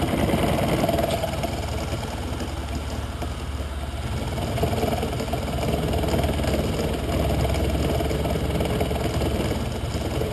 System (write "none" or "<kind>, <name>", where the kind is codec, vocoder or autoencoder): none